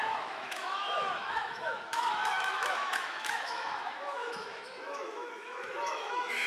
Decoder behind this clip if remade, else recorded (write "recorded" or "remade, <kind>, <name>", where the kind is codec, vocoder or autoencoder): remade, autoencoder, DAC-VAE